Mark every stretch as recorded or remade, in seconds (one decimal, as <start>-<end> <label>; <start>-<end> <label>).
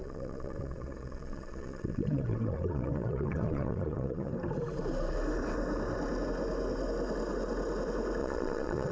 0.0-4.3 remade; 4.3-8.2 recorded; 8.2-8.9 remade